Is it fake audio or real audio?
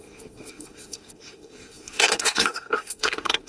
fake